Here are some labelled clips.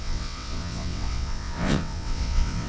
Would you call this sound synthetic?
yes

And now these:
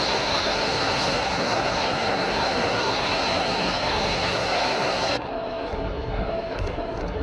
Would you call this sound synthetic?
yes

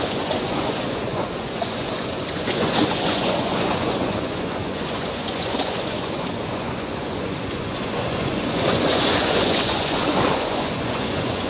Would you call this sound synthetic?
yes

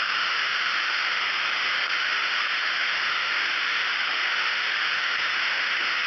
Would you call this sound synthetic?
yes